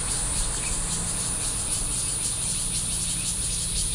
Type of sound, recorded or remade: recorded